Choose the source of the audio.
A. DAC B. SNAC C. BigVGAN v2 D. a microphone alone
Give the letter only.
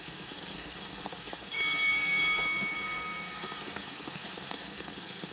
B